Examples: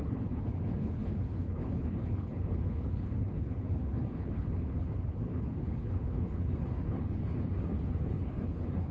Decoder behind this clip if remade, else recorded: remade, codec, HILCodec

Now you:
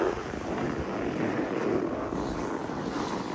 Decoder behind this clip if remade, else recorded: recorded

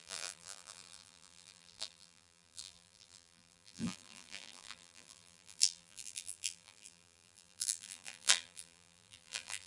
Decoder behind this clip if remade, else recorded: remade, vocoder, BigVGAN v2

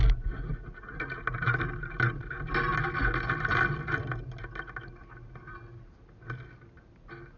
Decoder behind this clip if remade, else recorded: recorded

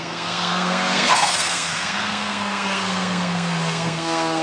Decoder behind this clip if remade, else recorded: remade, codec, SNAC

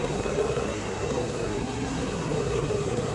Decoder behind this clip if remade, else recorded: remade, codec, SNAC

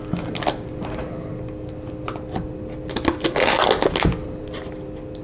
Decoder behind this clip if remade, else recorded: recorded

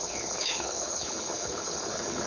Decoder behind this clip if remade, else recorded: remade, codec, HILCodec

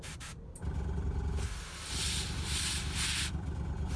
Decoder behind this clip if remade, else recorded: recorded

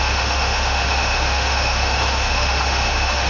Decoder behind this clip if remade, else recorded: remade, autoencoder, DAC-VAE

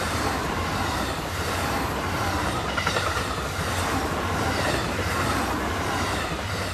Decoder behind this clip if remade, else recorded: remade, vocoder, BigVGAN v2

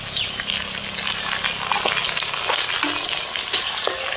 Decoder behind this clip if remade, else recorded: recorded